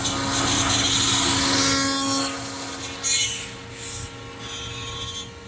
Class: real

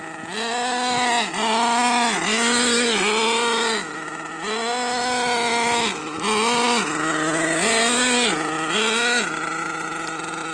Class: real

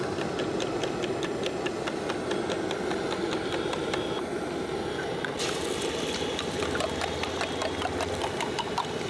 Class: real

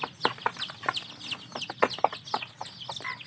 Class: real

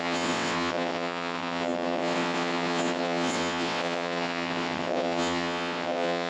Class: fake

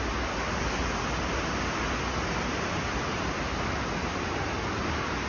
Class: real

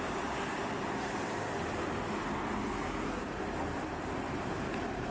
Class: real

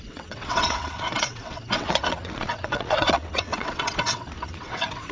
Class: fake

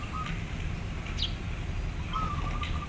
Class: real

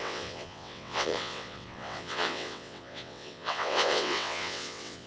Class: fake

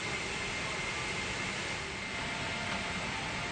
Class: real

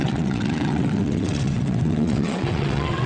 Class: fake